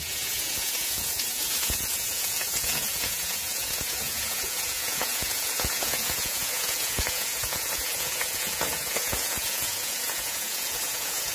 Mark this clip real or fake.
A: fake